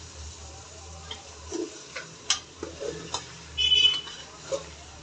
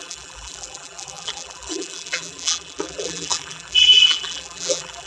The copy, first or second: second